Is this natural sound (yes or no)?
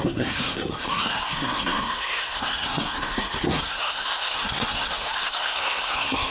no